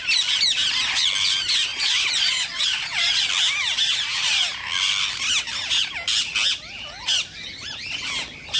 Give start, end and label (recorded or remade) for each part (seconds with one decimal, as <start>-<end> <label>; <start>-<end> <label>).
0.0-1.7 recorded; 1.7-3.2 remade; 3.2-8.6 recorded